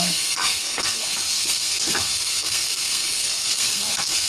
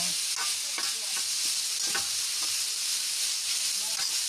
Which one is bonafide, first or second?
second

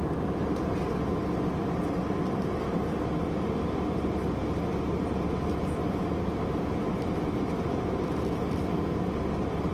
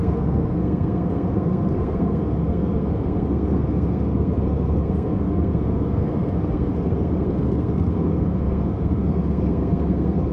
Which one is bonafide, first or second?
first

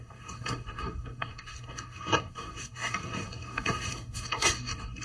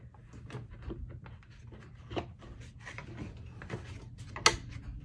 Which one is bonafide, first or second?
second